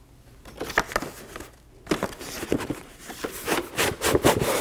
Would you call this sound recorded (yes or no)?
yes